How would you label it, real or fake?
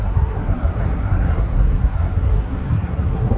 fake